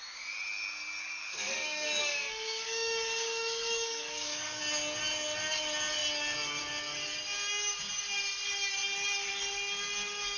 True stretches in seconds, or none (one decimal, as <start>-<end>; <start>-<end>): 0.0-1.0; 4.6-10.4